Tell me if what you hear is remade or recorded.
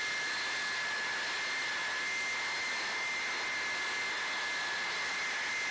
recorded